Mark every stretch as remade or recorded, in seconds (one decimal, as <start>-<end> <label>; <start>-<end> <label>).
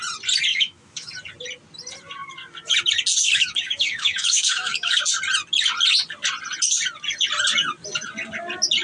0.0-0.5 recorded; 0.5-1.1 remade; 1.1-3.2 recorded; 3.2-5.0 remade; 5.0-8.8 recorded